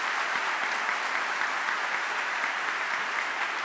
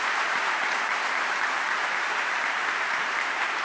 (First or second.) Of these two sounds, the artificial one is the second